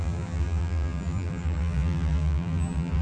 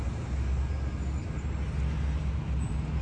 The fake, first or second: first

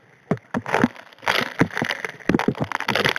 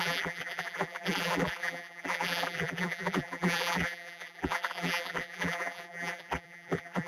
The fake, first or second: second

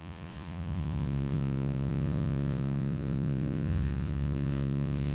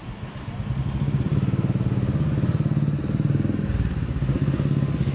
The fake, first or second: first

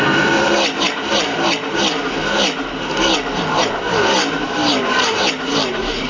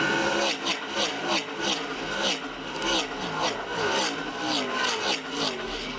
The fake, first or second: first